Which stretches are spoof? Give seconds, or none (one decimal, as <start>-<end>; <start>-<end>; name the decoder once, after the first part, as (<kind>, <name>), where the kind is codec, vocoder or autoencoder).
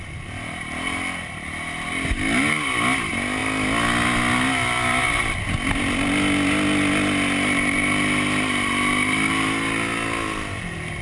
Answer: none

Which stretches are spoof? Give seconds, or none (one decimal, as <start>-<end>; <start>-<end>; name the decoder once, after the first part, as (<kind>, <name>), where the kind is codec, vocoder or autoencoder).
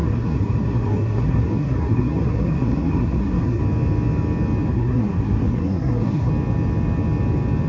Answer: 0.0-3.6 (codec, SNAC); 4.7-6.3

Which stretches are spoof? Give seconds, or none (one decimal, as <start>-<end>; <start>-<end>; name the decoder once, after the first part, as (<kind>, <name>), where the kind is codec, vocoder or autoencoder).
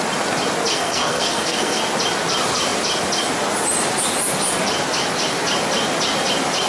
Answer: 0.7-1.8 (codec, SNAC)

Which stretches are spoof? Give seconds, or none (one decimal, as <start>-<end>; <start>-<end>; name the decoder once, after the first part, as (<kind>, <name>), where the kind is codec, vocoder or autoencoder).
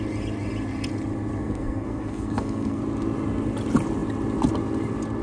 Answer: 1.4-2.8 (codec, SNAC)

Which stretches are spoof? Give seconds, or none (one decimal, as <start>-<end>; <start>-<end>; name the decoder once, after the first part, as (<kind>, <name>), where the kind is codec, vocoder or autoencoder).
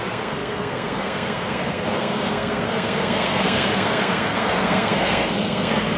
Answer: 0.0-6.0 (codec, SNAC)